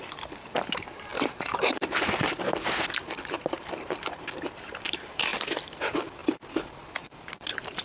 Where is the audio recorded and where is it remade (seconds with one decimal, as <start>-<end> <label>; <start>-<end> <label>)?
0.0-5.3 remade; 5.3-5.8 recorded; 5.8-7.8 remade